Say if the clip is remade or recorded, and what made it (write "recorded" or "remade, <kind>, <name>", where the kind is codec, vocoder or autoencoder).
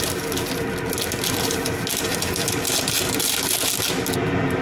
recorded